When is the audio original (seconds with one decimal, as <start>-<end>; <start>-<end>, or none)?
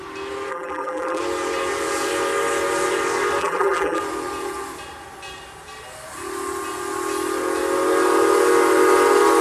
0.0-0.5; 1.2-3.4; 4.0-9.4